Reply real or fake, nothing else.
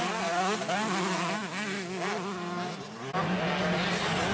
real